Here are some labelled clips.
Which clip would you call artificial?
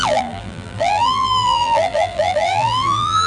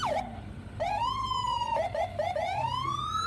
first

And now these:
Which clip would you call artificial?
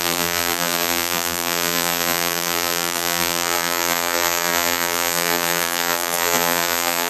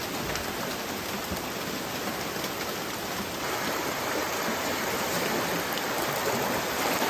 first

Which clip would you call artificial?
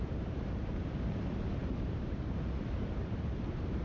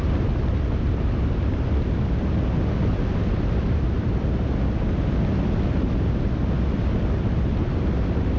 first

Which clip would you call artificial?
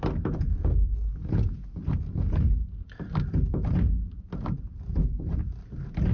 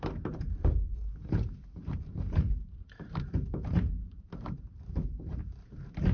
second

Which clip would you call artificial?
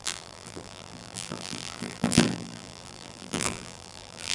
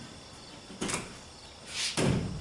first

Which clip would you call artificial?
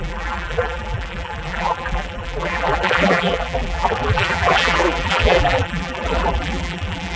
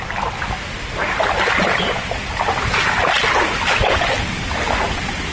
first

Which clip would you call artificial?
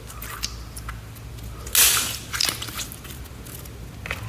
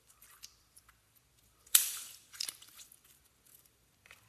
second